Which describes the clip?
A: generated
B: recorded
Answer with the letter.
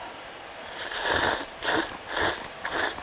B